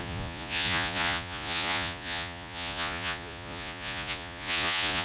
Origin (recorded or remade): remade